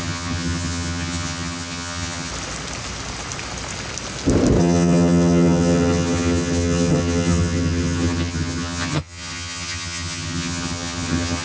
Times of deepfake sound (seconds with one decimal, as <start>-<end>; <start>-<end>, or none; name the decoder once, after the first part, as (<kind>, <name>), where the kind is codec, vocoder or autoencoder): 0.0-2.3 (vocoder, HiFi-GAN); 4.6-11.4